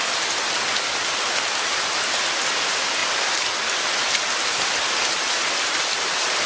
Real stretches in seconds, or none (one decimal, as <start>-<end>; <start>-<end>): 0.0-6.5